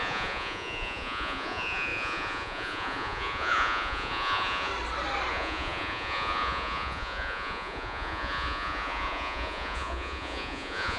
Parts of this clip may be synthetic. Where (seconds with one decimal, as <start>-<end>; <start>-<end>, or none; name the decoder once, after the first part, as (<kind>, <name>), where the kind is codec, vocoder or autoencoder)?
0.0-4.7 (vocoder, Vocos); 5.3-11.0

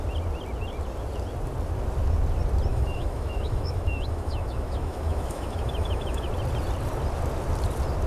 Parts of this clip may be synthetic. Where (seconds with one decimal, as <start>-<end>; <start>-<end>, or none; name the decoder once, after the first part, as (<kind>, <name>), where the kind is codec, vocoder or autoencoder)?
2.7-6.3 (autoencoder, DAC-VAE)

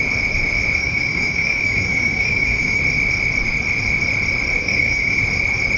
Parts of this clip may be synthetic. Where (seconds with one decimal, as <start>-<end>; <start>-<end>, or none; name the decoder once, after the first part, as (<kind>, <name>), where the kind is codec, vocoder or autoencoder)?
0.8-2.8 (codec, DAC); 4.6-5.2

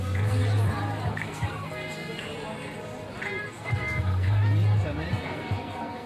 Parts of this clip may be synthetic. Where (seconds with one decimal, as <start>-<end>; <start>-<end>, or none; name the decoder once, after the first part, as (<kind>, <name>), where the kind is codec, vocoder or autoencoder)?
0.0-0.4 (codec, SNAC); 1.1-2.3; 3.5-4.4; 5.1-6.1

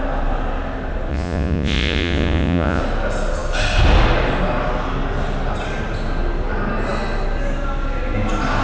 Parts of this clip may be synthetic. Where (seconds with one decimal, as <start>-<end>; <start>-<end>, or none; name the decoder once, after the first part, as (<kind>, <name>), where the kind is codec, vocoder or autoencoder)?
1.1-2.8 (vocoder, Vocos)